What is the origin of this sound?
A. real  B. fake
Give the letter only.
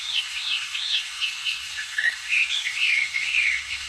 B